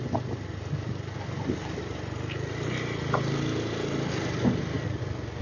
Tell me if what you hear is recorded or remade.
recorded